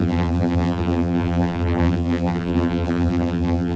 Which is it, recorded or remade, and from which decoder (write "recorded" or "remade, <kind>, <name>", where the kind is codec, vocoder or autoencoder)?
remade, vocoder, BigVGAN v2